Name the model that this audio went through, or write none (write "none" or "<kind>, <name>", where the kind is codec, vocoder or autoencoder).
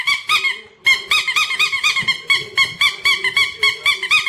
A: none